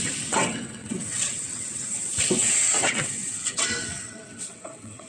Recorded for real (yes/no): no